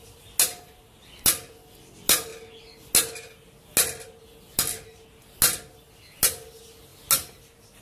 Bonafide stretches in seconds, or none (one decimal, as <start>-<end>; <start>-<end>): 0.0-7.8